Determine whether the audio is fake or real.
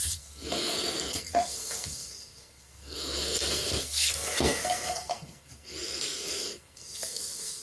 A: fake